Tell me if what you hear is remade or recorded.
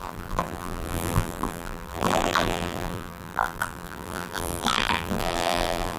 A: remade